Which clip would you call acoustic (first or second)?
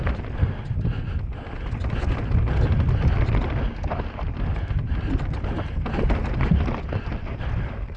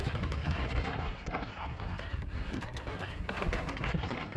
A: first